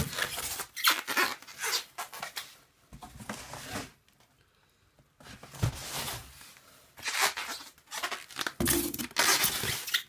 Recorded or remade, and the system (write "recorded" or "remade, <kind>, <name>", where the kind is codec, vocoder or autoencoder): recorded